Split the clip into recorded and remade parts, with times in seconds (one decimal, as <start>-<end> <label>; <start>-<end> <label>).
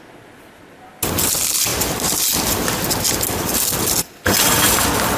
0.0-5.2 recorded